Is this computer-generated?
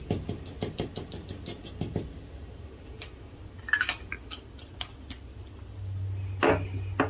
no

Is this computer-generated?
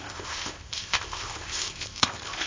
yes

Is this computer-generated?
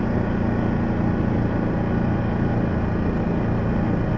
no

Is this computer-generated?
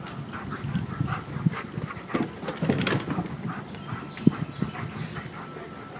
no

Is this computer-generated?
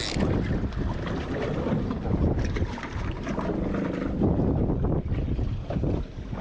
no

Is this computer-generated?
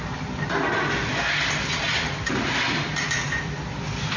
no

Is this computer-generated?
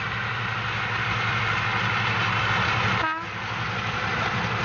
no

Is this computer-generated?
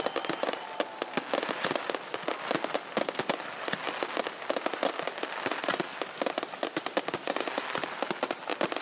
no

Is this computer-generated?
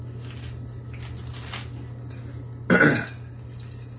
no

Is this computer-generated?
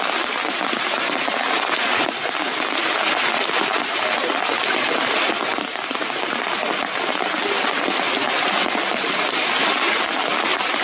no